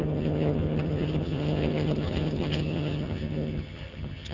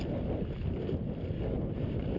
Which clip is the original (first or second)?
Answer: second